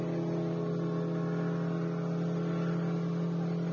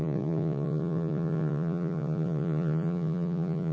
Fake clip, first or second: second